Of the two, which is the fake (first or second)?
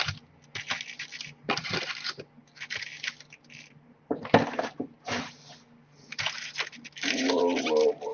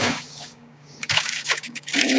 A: second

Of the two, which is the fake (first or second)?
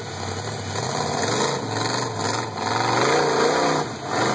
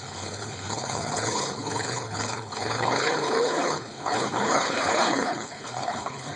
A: second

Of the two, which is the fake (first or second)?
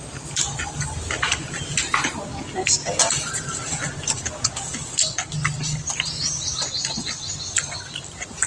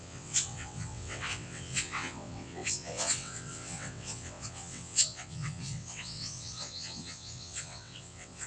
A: second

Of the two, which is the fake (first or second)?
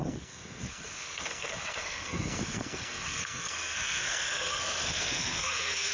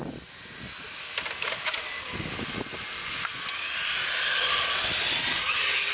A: first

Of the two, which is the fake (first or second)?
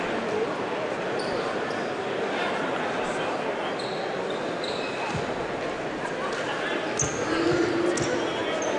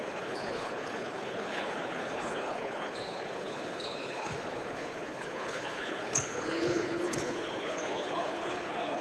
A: second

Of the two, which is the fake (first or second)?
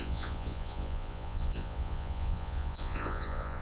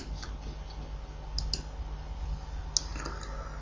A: first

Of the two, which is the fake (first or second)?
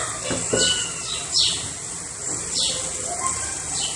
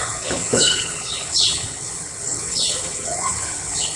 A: second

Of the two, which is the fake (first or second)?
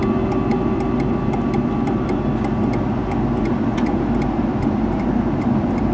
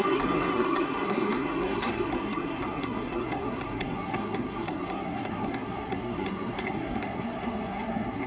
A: second